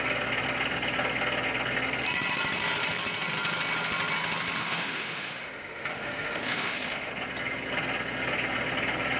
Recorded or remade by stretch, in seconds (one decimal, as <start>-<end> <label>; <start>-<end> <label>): 0.0-4.6 recorded; 4.6-7.1 remade; 7.1-9.2 recorded